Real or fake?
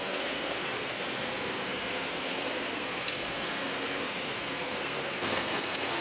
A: fake